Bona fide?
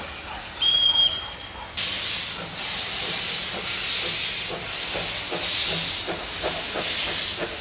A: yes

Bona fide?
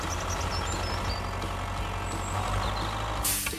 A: yes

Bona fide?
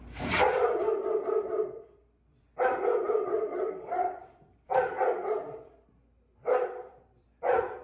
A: no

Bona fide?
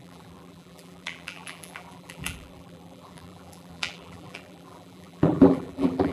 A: no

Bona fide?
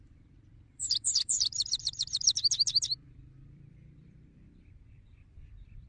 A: no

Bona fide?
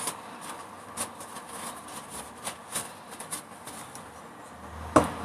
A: yes